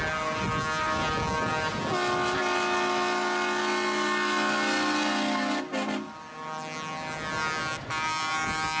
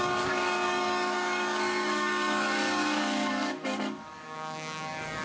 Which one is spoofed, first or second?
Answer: second